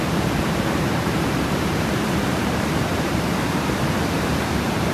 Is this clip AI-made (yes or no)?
yes